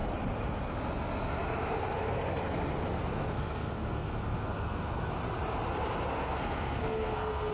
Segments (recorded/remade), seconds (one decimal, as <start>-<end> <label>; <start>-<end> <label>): 0.0-3.1 recorded; 3.1-5.0 remade; 5.0-6.1 recorded; 6.1-7.5 remade